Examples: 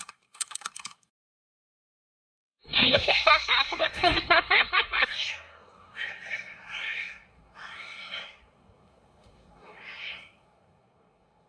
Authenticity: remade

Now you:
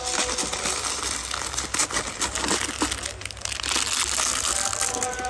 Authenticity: recorded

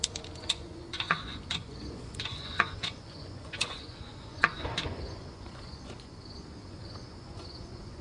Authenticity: remade